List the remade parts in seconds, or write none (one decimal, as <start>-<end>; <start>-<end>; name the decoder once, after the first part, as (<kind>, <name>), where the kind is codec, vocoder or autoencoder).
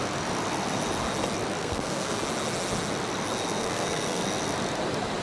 1.6-2.2 (codec, SNAC); 3.6-4.2